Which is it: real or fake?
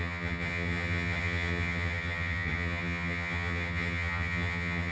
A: fake